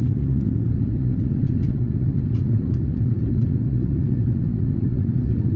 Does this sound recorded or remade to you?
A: remade